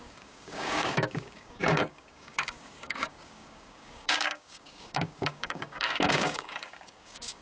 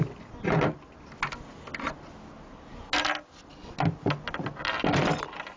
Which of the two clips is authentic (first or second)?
second